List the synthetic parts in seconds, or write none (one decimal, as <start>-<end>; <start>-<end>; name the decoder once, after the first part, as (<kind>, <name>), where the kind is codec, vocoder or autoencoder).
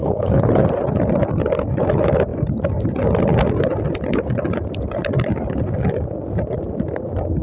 0.0-0.5 (codec, HILCodec)